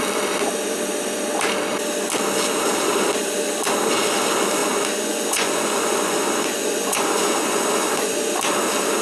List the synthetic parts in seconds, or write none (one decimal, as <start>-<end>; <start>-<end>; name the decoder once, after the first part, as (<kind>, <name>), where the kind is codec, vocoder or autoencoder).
4.6-8.2 (vocoder, Vocos)